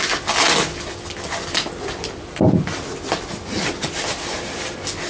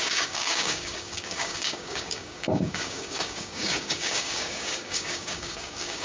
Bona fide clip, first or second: first